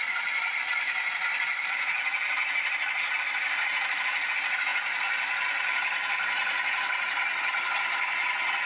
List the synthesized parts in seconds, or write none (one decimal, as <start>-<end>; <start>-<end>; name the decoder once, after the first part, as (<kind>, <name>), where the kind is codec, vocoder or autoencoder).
none